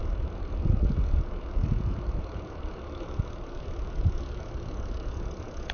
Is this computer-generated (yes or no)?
yes